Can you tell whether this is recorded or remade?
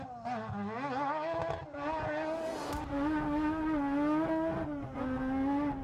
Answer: recorded